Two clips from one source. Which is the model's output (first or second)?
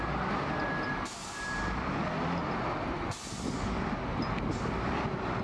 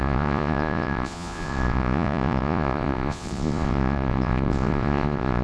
second